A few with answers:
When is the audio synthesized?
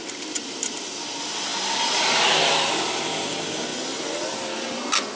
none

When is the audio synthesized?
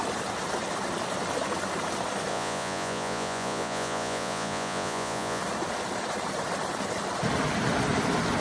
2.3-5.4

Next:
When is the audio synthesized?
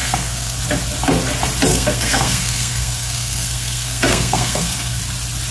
0.0-0.6; 1.7-5.0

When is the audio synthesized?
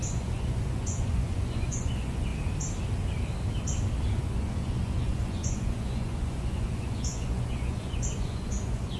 0.0-2.3; 4.1-9.0